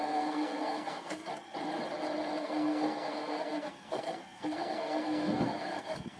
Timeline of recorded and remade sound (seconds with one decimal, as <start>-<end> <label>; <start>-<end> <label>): 0.0-1.3 remade; 1.3-2.4 recorded; 2.4-6.2 remade